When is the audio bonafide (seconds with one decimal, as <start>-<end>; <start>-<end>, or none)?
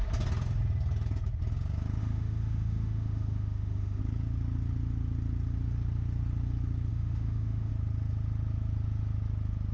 0.0-2.0; 4.0-6.9; 7.7-9.7